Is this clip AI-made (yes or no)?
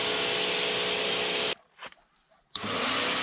no